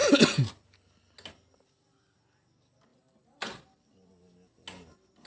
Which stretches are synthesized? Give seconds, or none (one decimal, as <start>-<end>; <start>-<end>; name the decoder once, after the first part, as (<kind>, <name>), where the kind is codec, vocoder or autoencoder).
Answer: 0.0-0.5 (vocoder, BigVGAN v2); 2.9-4.1